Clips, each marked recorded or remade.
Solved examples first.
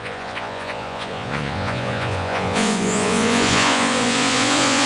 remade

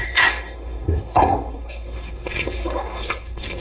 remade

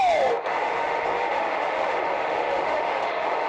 remade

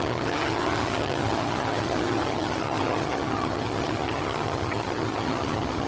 remade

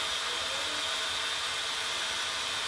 recorded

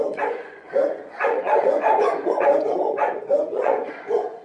remade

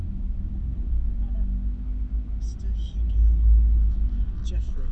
recorded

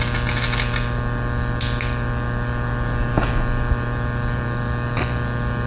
recorded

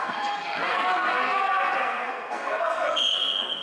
remade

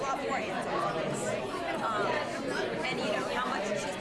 recorded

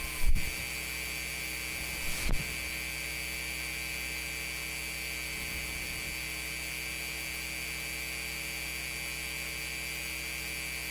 recorded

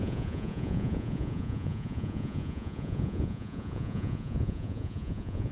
remade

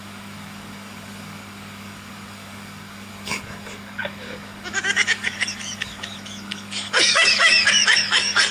remade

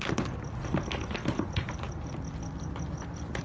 recorded